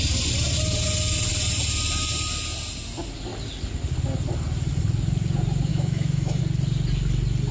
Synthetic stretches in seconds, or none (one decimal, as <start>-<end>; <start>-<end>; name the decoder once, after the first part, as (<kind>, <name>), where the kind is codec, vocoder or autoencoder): 5.7-6.4 (autoencoder, DAC-VAE)